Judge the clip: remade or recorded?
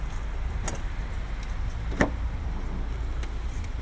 recorded